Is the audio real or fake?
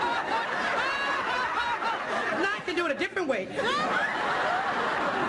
real